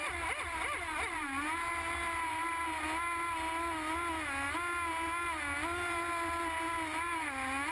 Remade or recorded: recorded